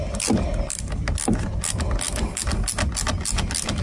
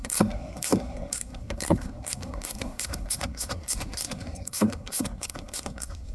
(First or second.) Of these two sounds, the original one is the first